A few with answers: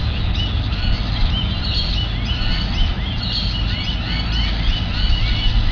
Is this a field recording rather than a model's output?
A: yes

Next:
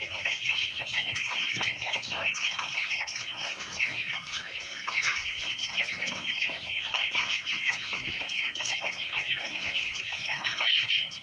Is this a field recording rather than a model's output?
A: no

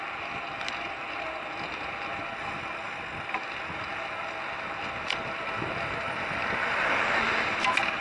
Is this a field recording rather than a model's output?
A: yes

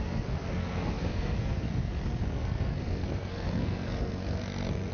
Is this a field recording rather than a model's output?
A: no